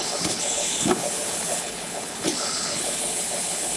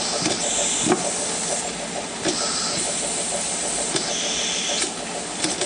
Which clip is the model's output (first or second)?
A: first